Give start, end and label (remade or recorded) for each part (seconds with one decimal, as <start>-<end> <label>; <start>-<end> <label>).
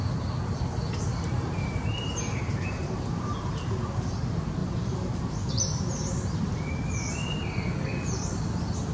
0.0-1.1 recorded; 1.1-4.1 remade; 4.1-4.6 recorded; 4.6-6.1 remade; 6.1-8.9 recorded